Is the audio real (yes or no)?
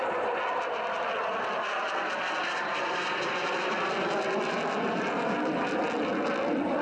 yes